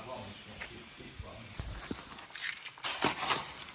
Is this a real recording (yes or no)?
no